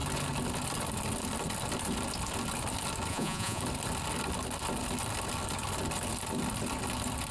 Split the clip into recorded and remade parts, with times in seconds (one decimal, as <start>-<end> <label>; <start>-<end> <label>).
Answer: 0.0-3.1 recorded; 3.1-3.6 remade; 3.6-7.3 recorded